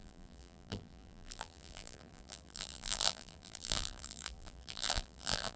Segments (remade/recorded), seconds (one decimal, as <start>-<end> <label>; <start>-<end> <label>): 0.0-5.6 remade